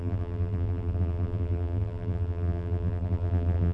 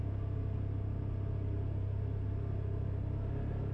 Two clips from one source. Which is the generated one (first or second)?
first